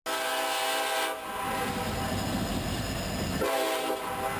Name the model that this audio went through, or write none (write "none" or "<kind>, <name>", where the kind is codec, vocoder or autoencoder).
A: none